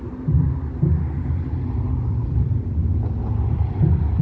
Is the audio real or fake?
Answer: real